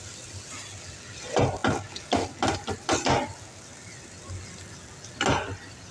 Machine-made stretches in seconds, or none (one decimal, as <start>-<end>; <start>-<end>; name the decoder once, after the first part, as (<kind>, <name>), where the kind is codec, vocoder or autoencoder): none